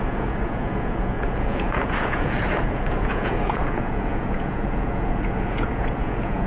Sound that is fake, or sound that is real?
fake